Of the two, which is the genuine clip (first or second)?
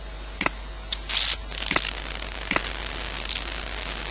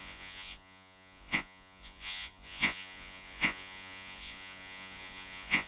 first